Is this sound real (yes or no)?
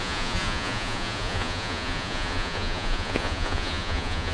no